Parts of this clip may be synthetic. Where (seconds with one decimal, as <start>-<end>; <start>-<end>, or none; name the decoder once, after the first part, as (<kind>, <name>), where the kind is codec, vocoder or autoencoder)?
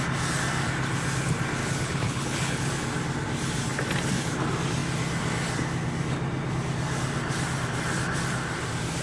1.6-2.7 (codec, HILCodec)